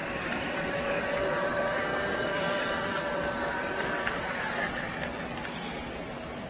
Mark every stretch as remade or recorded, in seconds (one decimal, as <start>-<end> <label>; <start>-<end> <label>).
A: 0.0-1.3 remade; 1.3-1.9 recorded; 1.9-3.9 remade; 3.9-6.5 recorded